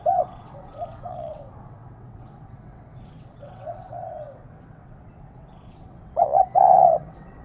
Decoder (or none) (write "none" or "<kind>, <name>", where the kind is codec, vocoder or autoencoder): vocoder, WaveNeXt